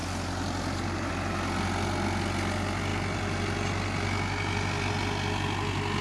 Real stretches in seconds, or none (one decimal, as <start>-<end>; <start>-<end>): 1.1-2.9; 4.9-6.0

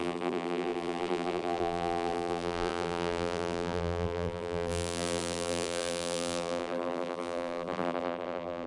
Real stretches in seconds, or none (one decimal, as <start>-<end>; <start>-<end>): none

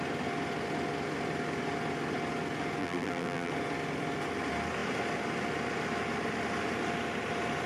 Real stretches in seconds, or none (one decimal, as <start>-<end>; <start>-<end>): 0.0-2.8; 3.5-7.7